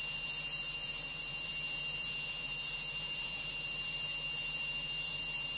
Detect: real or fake fake